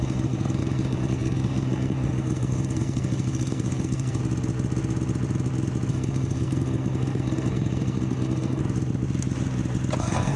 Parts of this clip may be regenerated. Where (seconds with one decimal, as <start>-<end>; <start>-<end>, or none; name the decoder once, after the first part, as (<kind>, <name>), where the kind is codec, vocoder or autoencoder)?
0.0-4.2 (codec, SNAC); 5.9-8.6; 10.0-10.4